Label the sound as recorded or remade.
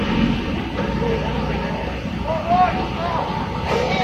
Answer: recorded